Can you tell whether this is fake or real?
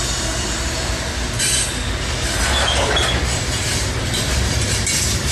real